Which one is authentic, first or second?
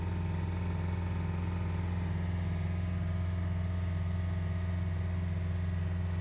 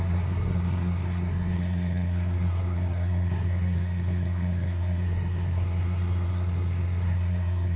first